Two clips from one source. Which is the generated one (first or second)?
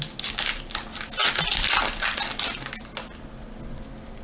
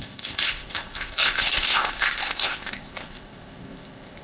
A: second